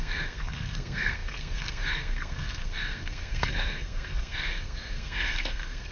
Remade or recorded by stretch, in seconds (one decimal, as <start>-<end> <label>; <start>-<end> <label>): 0.0-5.9 remade